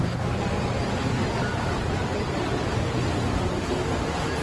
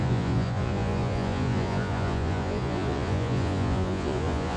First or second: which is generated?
second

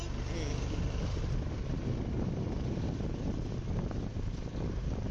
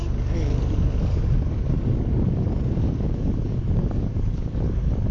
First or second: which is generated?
second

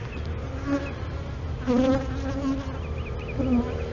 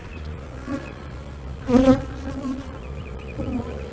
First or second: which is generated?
second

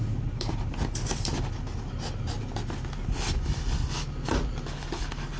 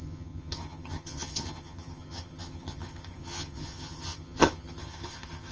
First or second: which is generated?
second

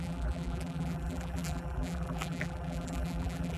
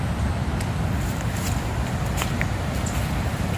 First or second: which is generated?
first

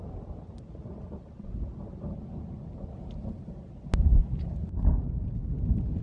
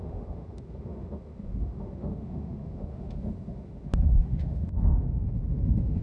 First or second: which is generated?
second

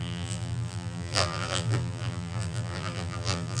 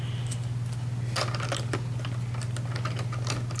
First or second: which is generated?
first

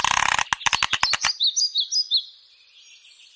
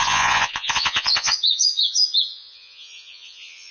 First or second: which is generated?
second